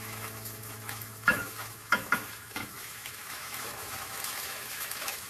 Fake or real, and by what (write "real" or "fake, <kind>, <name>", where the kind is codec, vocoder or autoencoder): fake, autoencoder, DAC-VAE